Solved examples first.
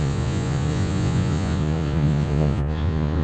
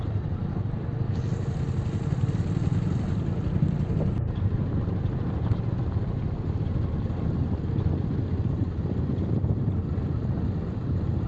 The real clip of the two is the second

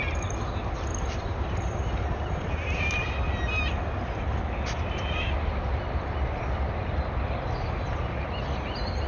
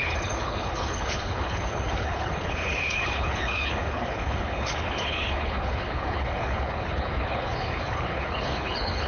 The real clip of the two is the first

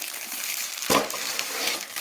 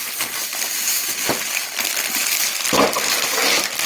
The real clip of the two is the second